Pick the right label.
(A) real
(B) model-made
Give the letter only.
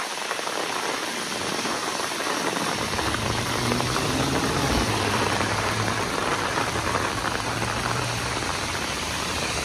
B